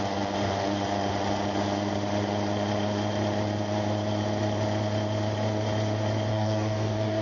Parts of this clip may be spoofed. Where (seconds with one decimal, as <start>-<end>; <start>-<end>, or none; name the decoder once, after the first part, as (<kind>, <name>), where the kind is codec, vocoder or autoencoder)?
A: 6.3-7.2 (codec, DAC)